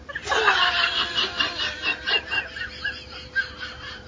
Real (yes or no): yes